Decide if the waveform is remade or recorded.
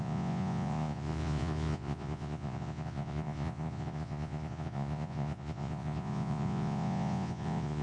remade